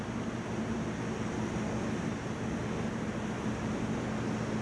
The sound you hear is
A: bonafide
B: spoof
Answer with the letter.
A